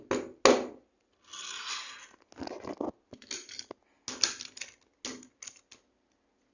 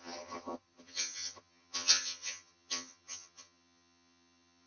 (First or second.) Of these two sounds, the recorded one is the first